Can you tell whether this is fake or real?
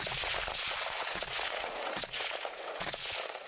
fake